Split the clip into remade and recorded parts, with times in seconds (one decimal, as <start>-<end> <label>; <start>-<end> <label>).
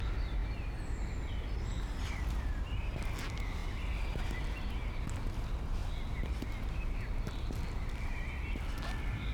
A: 0.0-9.3 recorded